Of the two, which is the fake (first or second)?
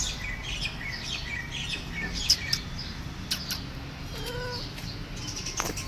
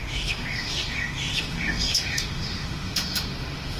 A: second